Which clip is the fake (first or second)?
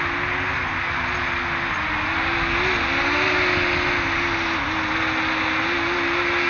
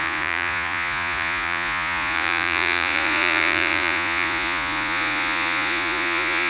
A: second